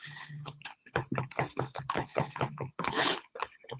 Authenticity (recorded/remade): remade